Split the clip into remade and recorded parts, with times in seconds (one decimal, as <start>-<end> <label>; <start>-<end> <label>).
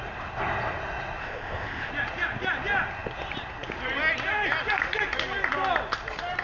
0.0-1.2 recorded; 1.2-1.9 remade; 1.9-6.4 recorded